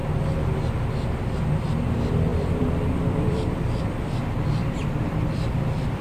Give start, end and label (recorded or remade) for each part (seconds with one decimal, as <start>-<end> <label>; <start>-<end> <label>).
0.0-1.4 recorded; 1.4-6.0 remade